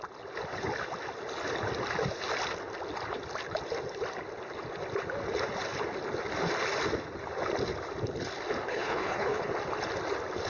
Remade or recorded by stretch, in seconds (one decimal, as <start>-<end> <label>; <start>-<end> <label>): 0.0-8.7 recorded; 8.7-9.5 remade; 9.5-10.5 recorded